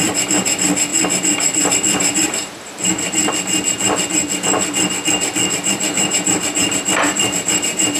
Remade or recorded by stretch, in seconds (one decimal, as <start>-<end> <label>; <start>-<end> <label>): 0.0-0.9 remade; 0.9-1.7 recorded; 1.7-3.2 remade; 3.2-5.5 recorded; 5.5-8.0 remade